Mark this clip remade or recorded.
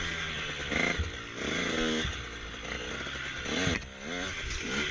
recorded